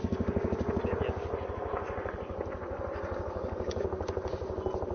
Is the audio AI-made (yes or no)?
no